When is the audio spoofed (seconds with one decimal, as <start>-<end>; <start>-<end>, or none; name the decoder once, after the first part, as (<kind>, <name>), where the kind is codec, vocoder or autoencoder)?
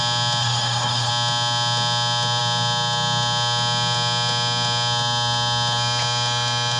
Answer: 0.4-1.1 (codec, HILCodec)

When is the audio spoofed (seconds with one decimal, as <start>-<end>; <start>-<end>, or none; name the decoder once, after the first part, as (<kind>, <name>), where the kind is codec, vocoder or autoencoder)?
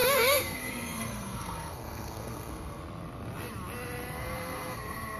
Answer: 0.0-2.8 (codec, SNAC); 4.2-5.2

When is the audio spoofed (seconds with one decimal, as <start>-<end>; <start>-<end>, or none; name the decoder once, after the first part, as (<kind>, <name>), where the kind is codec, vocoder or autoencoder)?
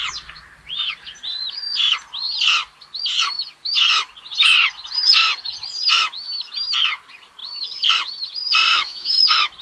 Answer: 8.7-9.2 (autoencoder, DAC-VAE)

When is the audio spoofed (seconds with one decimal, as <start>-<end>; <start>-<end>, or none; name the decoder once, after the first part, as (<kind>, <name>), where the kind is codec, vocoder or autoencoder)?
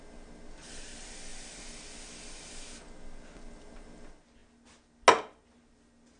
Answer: none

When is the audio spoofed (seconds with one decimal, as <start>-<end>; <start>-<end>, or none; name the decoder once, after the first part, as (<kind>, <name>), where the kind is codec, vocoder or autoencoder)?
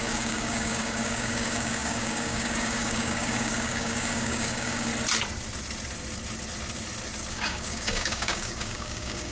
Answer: 0.0-4.9 (codec, DAC); 7.3-9.3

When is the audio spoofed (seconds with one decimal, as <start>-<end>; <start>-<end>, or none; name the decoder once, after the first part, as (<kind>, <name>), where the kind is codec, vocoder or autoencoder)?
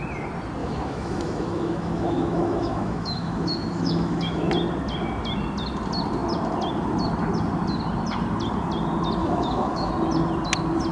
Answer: 0.6-4.5 (autoencoder, DAC-VAE); 9.2-9.9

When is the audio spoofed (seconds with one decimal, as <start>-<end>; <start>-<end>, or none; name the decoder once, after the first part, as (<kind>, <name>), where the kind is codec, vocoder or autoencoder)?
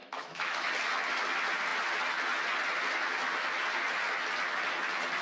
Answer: 0.0-0.7 (autoencoder, DAC-VAE)